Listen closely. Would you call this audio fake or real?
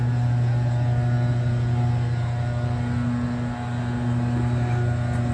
real